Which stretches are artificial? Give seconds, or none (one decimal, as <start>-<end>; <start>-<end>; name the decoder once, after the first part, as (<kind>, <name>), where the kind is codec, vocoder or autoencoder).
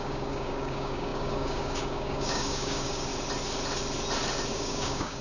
0.0-3.1 (codec, DAC); 4.5-5.2